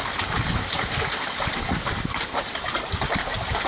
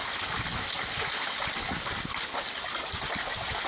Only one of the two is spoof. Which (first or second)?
first